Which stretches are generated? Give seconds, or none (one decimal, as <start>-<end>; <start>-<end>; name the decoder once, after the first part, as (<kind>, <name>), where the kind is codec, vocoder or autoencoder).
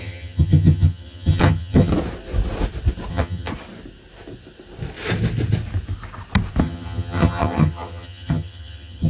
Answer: 0.0-1.9 (vocoder, HiFi-GAN); 3.1-3.5; 6.6-9.1